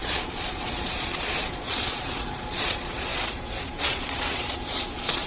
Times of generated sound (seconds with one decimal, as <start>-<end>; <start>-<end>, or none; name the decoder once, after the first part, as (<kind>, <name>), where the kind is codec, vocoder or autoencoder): 0.0-5.3 (vocoder, Vocos)